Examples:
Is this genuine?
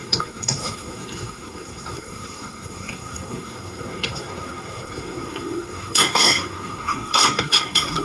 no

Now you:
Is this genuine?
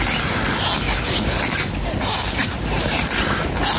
yes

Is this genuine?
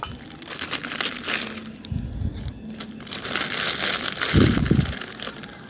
yes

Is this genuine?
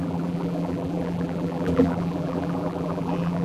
no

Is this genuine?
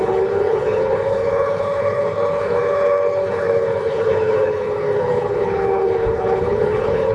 no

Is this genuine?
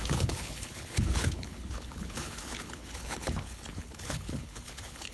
no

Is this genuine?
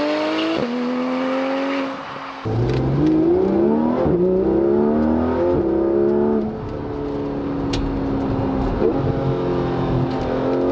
yes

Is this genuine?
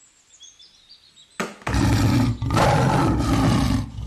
yes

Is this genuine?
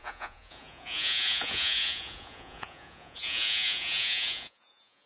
no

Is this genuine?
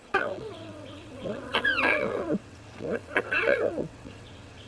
no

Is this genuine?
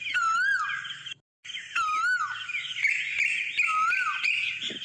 yes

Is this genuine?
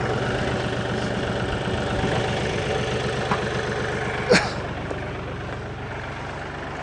yes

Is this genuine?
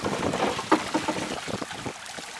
yes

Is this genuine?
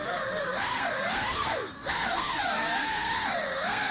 no